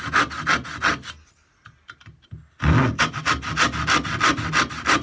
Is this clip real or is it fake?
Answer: real